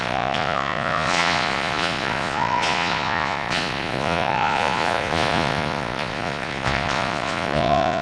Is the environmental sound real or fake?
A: fake